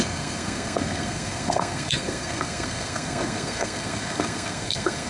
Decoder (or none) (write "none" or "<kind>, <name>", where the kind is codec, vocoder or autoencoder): codec, SNAC